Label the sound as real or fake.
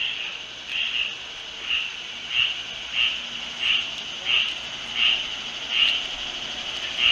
real